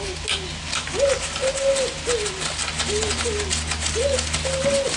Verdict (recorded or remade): recorded